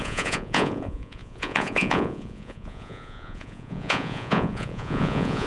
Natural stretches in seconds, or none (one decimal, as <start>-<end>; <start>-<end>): none